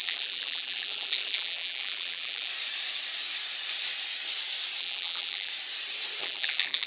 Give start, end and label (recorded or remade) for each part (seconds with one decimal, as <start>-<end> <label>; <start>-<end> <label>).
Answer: 0.0-2.5 remade; 2.5-4.8 recorded; 4.8-5.5 remade; 5.5-6.2 recorded; 6.2-6.9 remade